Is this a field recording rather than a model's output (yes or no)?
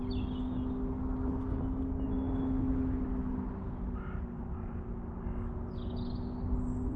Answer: yes